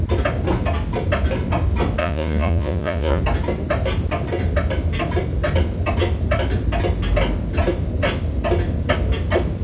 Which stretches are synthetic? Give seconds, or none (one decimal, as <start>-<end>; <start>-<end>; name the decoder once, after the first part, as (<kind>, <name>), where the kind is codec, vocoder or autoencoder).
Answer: 2.0-3.2 (vocoder, Vocos)